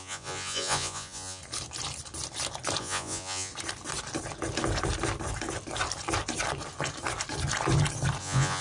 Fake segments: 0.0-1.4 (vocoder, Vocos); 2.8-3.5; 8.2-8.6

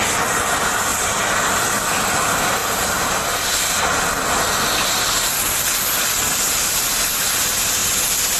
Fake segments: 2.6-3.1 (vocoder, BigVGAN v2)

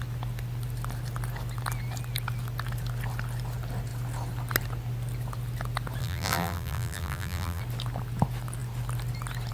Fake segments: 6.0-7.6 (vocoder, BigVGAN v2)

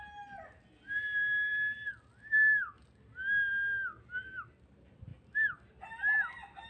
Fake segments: none

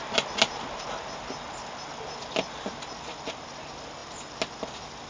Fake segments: none

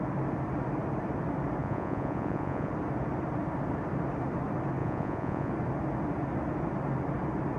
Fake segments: 1.6-2.7 (vocoder, Vocos); 4.8-5.5